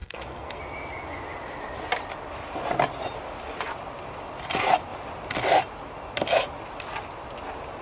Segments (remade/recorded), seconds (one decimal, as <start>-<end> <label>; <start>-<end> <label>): 0.0-0.6 remade; 0.6-7.8 recorded